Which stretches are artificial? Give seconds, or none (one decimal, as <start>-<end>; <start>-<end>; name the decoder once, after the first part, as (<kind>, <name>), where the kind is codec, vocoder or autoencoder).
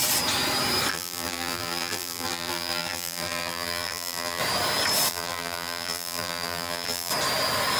0.9-4.4 (vocoder, BigVGAN v2); 5.1-7.1